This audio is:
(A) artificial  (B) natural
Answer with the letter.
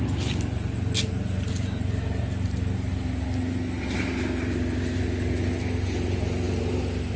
B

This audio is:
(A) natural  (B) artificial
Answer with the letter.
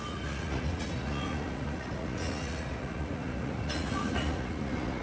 B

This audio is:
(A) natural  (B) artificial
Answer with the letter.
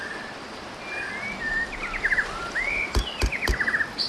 A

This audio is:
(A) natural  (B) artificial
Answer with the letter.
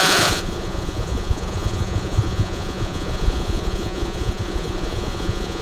B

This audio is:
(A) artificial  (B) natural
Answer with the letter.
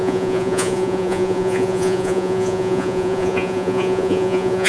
A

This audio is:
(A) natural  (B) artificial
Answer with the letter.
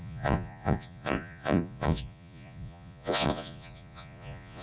B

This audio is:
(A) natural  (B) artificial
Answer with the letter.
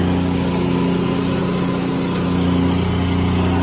A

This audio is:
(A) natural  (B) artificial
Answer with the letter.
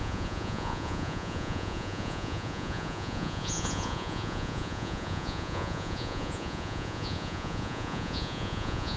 B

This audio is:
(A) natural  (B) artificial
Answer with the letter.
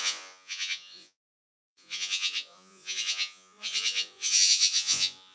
B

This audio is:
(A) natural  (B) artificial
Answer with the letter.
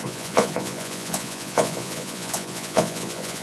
B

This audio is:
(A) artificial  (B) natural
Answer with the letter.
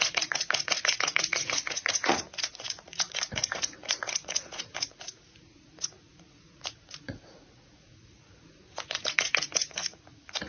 A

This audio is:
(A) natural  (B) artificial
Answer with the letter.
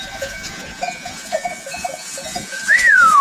B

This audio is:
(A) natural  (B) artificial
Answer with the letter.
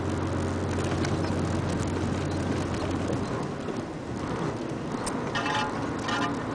A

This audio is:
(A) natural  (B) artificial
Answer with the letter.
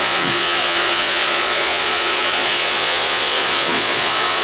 B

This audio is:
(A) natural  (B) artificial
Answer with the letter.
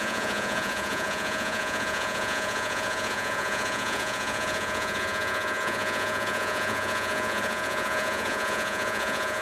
B